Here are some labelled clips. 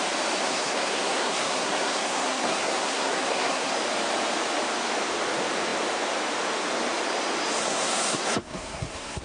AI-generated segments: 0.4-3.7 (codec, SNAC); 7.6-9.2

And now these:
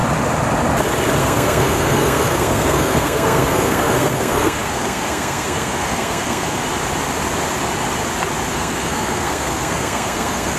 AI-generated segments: 1.2-6.6 (codec, SNAC); 8.5-10.6

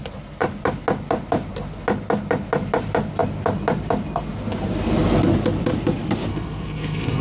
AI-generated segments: 6.3-7.2 (codec, SNAC)

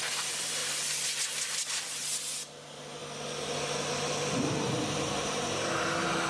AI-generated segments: none

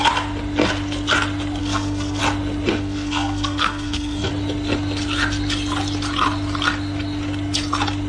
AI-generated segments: 1.6-2.2 (codec, SNAC); 2.7-4.3

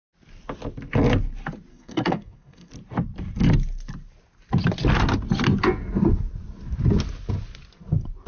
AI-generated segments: 1.7-2.7 (codec, SNAC)

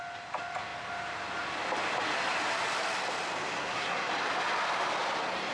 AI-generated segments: 3.6-4.1 (codec, SNAC)

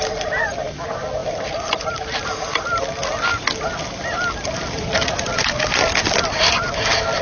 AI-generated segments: none